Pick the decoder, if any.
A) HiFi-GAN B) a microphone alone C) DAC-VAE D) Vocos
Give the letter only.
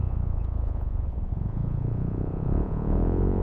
D